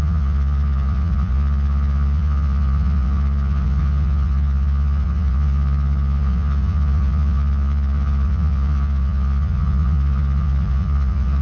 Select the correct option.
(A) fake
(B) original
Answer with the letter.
A